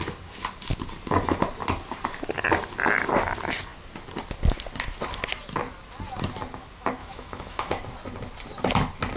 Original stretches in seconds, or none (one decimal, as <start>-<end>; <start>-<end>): 0.0-7.0; 7.7-9.2